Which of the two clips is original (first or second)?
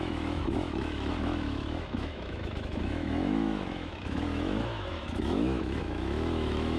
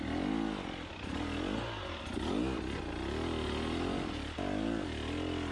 second